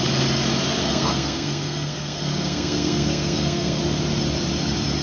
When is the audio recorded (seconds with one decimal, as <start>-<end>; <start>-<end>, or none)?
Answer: 0.0-0.8; 3.8-5.0